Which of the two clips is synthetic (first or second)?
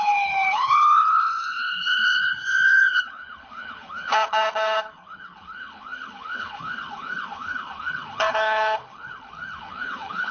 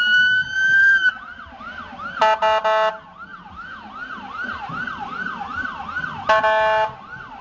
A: first